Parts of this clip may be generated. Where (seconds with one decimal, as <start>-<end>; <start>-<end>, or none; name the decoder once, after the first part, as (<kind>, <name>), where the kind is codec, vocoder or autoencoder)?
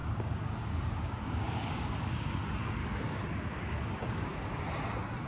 0.0-2.3 (codec, DAC); 2.8-4.6